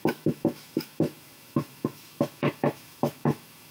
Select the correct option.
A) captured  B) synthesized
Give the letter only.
B